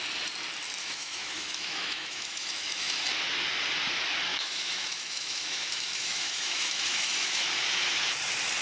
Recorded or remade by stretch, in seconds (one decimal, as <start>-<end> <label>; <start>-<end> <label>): 0.0-0.8 recorded; 0.8-3.0 remade; 3.0-4.3 recorded; 4.3-7.5 remade; 7.5-8.6 recorded